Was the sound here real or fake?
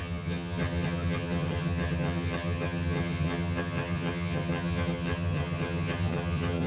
fake